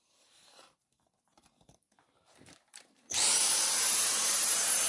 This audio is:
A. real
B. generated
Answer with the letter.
B